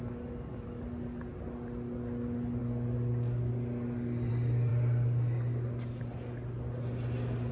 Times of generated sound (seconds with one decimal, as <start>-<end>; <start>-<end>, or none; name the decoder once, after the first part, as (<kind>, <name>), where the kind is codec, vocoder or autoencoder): none